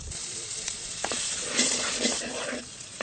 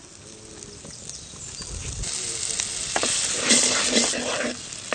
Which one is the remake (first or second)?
first